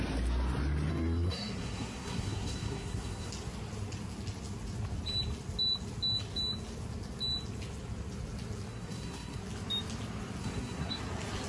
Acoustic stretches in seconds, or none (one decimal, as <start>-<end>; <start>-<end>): 0.0-0.9; 3.3-8.7; 9.4-10.4; 11.0-11.5